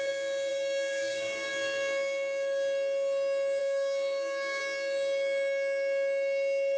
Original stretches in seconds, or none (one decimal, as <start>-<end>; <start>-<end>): 0.0-0.5; 1.5-3.6; 4.6-6.8